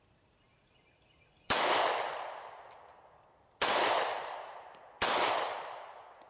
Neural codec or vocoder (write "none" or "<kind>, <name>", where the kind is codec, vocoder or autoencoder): none